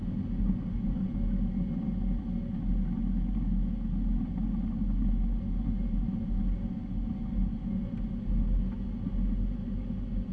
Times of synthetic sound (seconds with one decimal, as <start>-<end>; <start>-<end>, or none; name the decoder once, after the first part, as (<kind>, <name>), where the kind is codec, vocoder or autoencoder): none